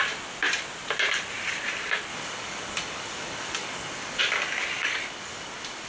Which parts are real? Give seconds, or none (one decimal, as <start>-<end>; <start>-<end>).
0.0-2.1; 4.2-4.8